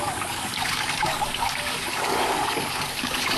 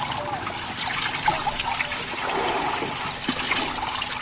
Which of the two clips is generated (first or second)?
first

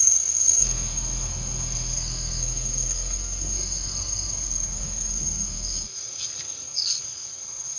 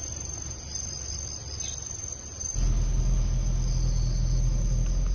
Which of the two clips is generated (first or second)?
first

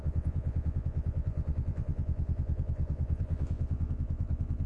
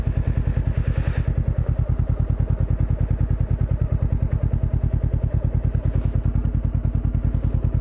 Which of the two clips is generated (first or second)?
first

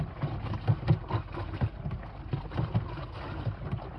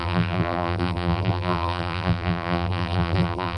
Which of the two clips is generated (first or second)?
second